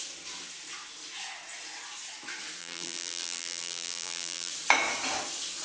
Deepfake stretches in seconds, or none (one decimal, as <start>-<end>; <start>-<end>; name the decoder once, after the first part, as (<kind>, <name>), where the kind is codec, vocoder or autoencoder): 2.6-4.5 (vocoder, BigVGAN v2)